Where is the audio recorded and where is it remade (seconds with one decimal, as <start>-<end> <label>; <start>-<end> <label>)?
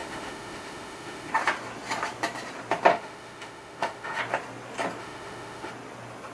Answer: 0.0-1.3 remade; 1.3-2.9 recorded; 2.9-4.2 remade; 4.2-5.0 recorded; 5.0-5.7 remade; 5.7-6.3 recorded